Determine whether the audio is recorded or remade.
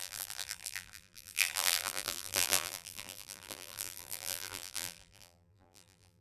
remade